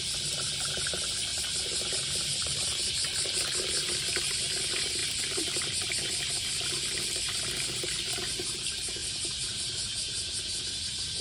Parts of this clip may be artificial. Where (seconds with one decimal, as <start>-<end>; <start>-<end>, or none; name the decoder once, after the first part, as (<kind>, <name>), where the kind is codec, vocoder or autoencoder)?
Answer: 1.3-2.9 (vocoder, BigVGAN v2); 9.0-10.4